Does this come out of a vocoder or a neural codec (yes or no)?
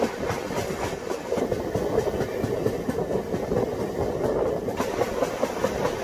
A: no